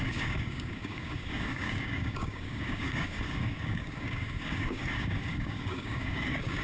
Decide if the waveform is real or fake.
fake